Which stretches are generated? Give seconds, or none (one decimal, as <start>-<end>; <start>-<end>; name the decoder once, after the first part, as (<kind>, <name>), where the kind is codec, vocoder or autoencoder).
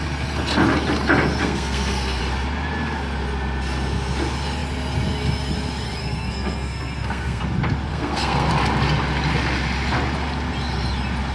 1.4-2.2 (codec, SNAC); 6.0-7.4; 7.9-8.5